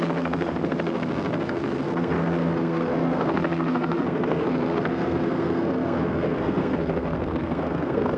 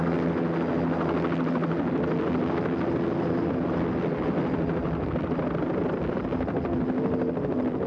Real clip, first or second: second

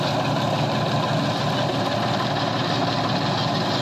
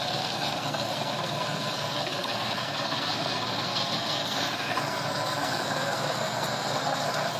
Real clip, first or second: first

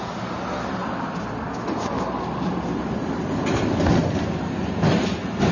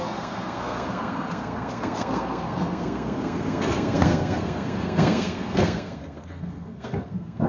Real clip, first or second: first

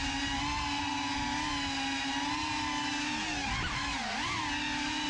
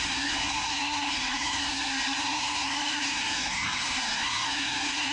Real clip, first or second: first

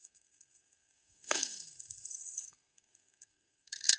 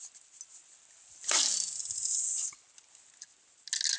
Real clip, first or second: second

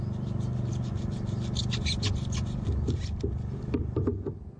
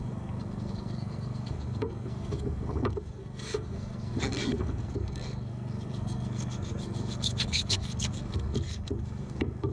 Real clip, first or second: first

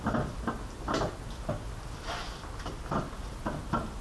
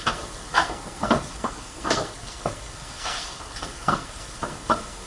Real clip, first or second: first